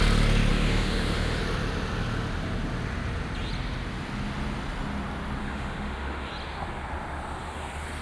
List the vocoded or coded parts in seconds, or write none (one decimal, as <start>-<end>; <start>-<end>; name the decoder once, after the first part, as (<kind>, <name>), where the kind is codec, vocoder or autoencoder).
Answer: 0.5-1.4 (autoencoder, DAC-VAE); 5.4-6.3